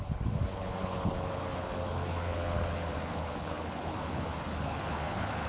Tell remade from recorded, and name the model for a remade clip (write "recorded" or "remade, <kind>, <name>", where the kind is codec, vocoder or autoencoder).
remade, codec, HILCodec